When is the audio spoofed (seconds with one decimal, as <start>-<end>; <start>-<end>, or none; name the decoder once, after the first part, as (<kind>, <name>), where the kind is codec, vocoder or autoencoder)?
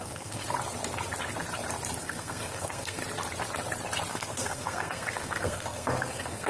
0.0-0.4 (codec, SNAC); 2.0-3.0; 4.1-6.5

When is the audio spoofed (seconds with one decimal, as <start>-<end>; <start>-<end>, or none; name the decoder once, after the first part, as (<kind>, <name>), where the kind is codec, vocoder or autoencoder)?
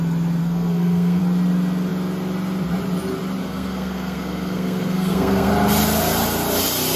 0.4-1.2 (codec, SNAC); 3.4-5.5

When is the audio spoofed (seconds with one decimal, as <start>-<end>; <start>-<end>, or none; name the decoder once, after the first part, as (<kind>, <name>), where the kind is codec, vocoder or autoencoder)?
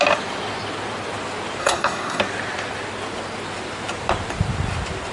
1.6-2.2 (codec, SNAC)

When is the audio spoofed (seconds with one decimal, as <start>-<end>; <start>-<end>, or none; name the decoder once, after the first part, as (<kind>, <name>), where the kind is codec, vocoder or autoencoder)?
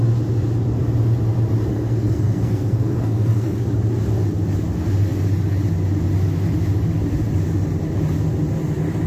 1.7-3.7 (codec, SNAC)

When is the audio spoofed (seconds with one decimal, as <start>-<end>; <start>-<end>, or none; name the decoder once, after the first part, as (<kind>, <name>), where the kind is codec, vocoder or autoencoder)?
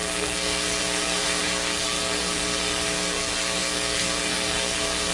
0.0-5.1 (codec, SNAC)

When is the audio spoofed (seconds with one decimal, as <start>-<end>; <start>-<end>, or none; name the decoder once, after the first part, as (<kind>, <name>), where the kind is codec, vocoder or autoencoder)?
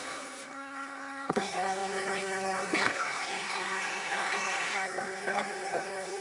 0.0-6.2 (codec, SNAC)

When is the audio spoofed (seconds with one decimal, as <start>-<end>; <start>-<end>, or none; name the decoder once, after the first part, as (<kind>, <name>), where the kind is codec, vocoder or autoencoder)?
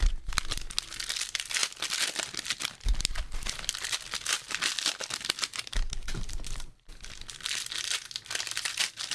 none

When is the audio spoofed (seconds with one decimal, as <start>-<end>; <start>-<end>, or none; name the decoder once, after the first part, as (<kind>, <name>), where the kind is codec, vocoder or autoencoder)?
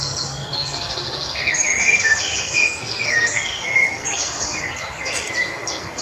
0.0-6.0 (codec, SNAC)